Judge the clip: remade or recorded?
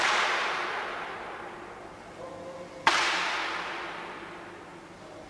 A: recorded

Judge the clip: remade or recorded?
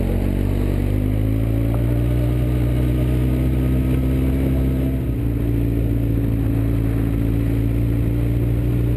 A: recorded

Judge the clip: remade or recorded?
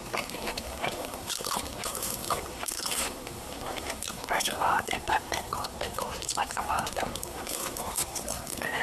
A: remade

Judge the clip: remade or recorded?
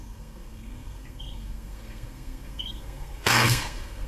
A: remade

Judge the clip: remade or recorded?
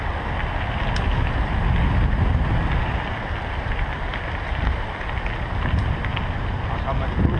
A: recorded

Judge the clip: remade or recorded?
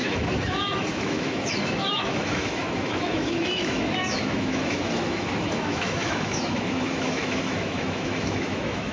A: remade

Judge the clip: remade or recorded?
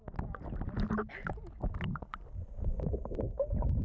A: recorded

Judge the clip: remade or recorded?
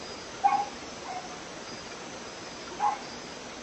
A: recorded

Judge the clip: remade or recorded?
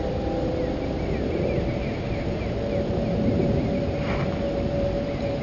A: recorded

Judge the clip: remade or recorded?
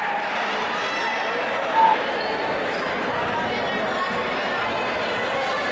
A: recorded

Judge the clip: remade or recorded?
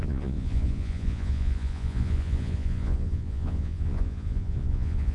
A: remade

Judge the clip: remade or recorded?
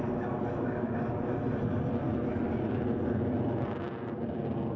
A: recorded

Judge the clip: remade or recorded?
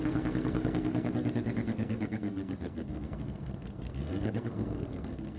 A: remade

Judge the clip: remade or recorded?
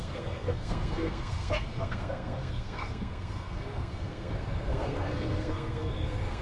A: remade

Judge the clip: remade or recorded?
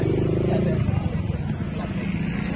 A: recorded